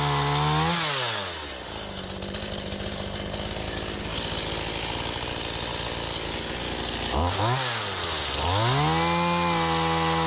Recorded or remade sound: recorded